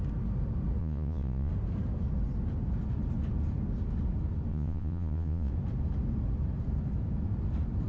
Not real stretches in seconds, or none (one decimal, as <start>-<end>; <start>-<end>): 0.8-1.5; 4.5-5.5